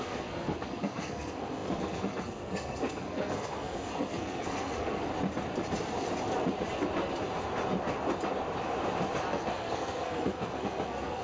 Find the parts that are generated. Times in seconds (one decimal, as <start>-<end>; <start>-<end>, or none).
0.0-5.1; 9.3-11.2